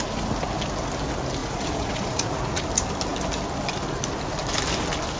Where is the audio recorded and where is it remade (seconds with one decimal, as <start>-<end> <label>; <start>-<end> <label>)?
0.0-1.4 recorded; 1.4-2.6 remade; 2.6-5.2 recorded